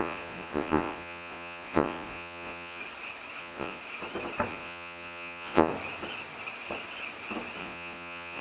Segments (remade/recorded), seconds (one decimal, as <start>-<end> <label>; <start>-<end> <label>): 0.0-2.8 remade; 2.8-3.4 recorded; 3.4-3.8 remade; 3.8-4.5 recorded; 4.5-5.7 remade; 5.7-7.6 recorded; 7.6-8.4 remade